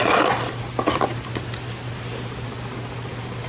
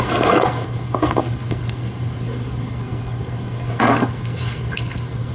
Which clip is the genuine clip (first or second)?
first